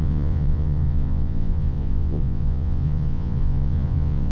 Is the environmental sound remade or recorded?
remade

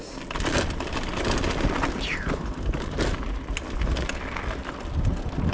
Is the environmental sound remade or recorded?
recorded